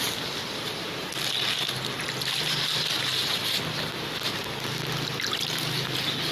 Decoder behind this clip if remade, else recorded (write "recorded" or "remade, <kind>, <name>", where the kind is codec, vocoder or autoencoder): recorded